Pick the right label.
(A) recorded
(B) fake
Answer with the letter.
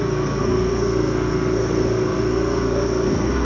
B